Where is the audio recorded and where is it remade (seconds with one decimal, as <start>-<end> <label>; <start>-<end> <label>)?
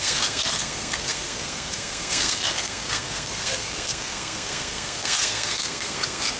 0.0-6.4 remade